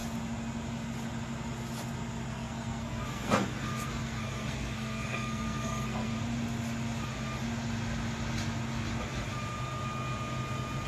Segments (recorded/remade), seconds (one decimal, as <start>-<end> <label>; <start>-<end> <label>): 0.0-2.3 recorded; 2.3-6.1 remade; 6.1-10.9 recorded